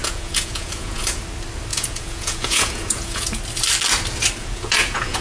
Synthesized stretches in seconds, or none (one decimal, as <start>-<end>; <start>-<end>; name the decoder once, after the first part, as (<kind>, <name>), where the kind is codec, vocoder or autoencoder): 0.0-1.2 (vocoder, Vocos); 1.7-3.4; 4.4-5.2